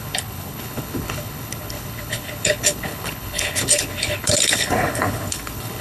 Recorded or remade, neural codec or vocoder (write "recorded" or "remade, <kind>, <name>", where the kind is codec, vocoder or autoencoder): remade, codec, HILCodec